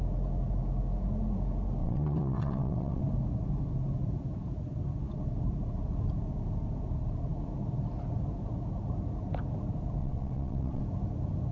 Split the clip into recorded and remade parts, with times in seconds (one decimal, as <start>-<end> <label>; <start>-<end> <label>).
0.0-1.8 recorded; 1.8-3.0 remade; 3.0-10.0 recorded; 10.0-10.8 remade; 10.8-11.5 recorded